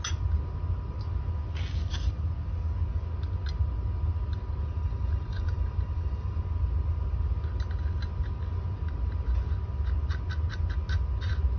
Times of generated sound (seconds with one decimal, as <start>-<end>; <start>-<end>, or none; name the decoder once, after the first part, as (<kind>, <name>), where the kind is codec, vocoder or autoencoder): 4.6-6.4 (vocoder, BigVGAN v2)